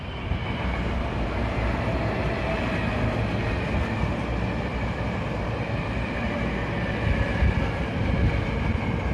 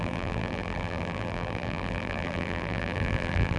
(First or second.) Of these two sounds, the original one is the first